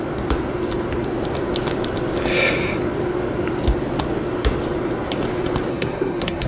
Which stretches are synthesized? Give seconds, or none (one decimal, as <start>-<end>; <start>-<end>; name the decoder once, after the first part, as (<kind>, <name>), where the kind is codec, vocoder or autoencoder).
5.7-6.5 (codec, SNAC)